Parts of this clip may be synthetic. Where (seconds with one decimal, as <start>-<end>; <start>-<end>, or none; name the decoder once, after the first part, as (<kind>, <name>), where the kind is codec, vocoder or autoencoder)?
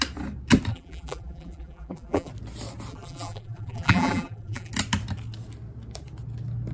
0.7-2.3 (vocoder, BigVGAN v2); 2.9-4.7